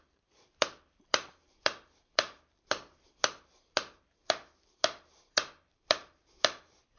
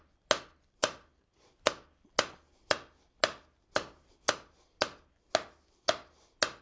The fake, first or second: first